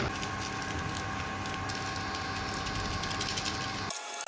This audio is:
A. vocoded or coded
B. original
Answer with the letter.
B